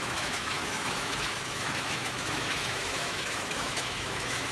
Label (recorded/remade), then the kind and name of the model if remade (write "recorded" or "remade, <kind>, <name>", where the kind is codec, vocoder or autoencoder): remade, autoencoder, DAC-VAE